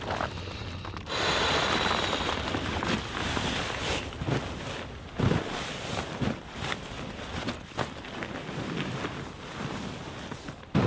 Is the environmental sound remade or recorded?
recorded